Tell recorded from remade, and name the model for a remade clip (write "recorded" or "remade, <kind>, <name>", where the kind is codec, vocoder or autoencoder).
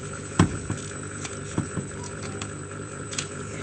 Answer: remade, vocoder, Vocos